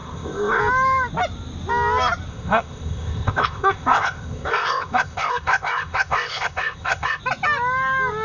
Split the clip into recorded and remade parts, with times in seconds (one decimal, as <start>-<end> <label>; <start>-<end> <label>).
0.0-0.6 remade; 0.6-2.3 recorded; 2.3-7.2 remade; 7.2-8.2 recorded